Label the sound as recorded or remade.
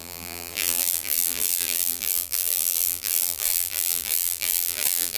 remade